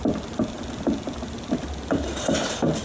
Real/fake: real